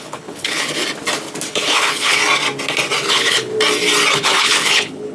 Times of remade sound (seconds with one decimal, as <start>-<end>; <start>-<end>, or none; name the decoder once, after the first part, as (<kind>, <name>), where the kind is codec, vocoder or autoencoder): 0.0-0.8 (codec, HILCodec); 1.5-2.2; 3.1-3.5; 4.1-5.1